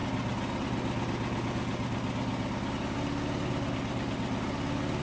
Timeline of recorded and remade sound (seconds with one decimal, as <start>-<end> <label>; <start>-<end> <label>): 0.0-5.0 recorded